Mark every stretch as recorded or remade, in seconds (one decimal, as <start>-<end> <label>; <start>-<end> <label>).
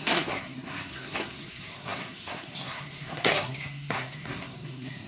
0.0-5.1 remade